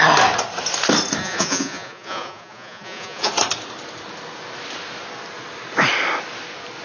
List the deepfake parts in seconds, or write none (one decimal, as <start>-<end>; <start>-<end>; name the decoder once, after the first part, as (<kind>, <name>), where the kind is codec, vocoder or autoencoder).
1.2-3.3 (vocoder, Vocos)